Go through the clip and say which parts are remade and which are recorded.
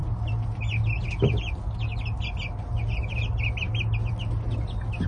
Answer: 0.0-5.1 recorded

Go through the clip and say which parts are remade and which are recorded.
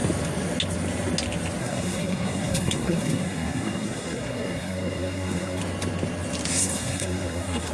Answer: 0.0-1.6 recorded; 1.6-5.6 remade; 5.6-6.5 recorded; 6.5-7.7 remade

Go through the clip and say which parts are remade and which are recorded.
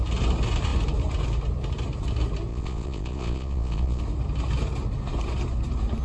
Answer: 0.0-2.5 recorded; 2.5-4.0 remade; 4.0-6.0 recorded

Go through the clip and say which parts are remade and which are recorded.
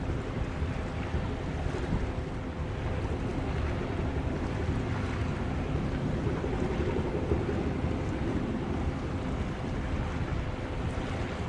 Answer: 0.0-11.5 recorded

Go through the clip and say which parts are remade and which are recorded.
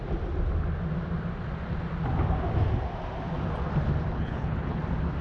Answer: 0.0-4.1 recorded; 4.1-4.8 remade; 4.8-5.2 recorded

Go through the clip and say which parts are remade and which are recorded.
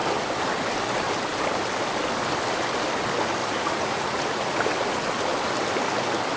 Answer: 0.0-3.4 recorded; 3.4-4.7 remade; 4.7-6.4 recorded